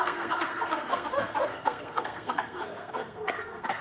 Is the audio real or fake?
fake